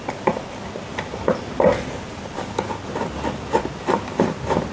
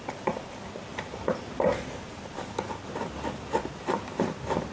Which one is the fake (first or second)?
second